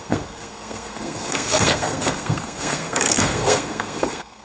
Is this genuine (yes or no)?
no